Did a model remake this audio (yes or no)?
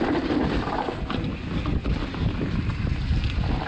no